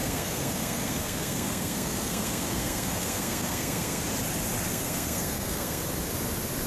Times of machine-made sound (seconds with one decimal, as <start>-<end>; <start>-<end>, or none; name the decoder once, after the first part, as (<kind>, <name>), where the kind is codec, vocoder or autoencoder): 0.0-4.0 (codec, SNAC); 4.7-5.8

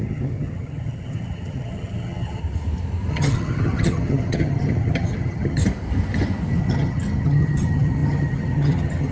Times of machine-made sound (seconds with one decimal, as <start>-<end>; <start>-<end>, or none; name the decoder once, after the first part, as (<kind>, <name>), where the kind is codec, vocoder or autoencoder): 0.0-2.4 (vocoder, HiFi-GAN); 3.1-5.6; 6.6-9.1

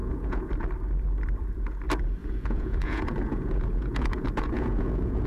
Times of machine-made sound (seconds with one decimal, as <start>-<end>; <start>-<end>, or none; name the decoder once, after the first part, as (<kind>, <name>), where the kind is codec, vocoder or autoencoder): 0.0-0.5 (vocoder, Vocos); 2.2-5.3

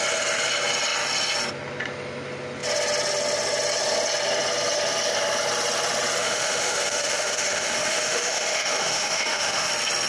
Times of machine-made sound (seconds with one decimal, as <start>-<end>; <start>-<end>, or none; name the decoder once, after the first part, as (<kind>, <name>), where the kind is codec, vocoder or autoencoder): 6.2-9.7 (autoencoder, DAC-VAE)

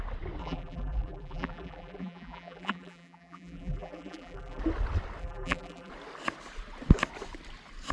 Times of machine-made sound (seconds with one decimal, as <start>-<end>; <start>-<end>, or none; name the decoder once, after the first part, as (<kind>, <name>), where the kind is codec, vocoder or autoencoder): 0.4-4.6 (vocoder, BigVGAN v2); 5.2-5.9

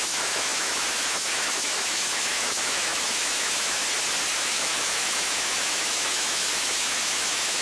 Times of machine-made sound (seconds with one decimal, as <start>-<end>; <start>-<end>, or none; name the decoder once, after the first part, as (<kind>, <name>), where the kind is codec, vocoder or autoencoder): 0.0-3.8 (autoencoder, DAC-VAE); 4.3-7.6

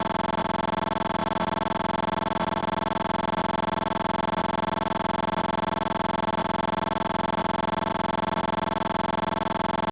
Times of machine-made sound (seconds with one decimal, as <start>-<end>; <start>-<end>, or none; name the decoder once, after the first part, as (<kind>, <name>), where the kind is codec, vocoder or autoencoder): none